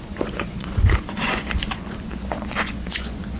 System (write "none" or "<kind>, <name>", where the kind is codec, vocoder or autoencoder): vocoder, Vocos